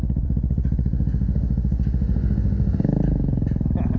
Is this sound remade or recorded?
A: recorded